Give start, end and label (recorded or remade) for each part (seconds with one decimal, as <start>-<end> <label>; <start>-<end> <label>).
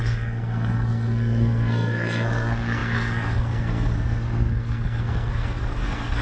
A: 0.0-6.2 remade